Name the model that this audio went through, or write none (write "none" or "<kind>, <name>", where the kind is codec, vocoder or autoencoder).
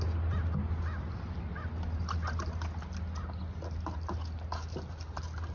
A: none